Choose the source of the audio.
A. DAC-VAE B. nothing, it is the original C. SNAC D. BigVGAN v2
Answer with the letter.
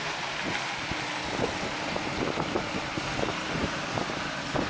B